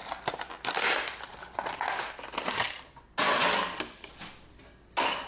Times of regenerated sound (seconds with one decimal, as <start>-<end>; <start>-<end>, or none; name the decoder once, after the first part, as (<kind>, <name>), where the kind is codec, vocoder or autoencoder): none